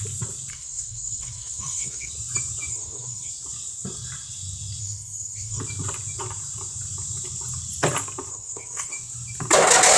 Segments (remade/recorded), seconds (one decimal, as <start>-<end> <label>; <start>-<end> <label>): 0.0-0.5 recorded; 0.5-2.1 remade; 2.1-2.7 recorded; 2.7-3.3 remade; 3.3-4.8 recorded; 4.8-5.6 remade; 5.6-8.3 recorded; 8.3-8.9 remade; 8.9-10.0 recorded